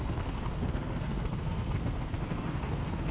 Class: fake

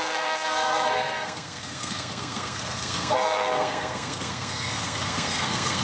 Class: fake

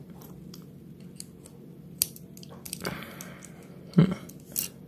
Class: real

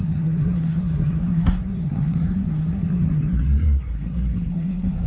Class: fake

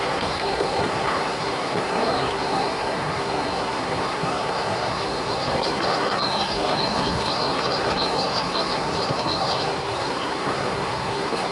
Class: fake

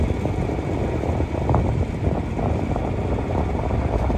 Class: real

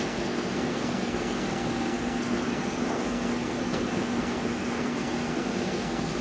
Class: fake